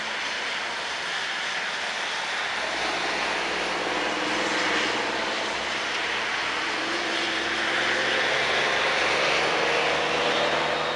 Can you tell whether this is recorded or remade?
recorded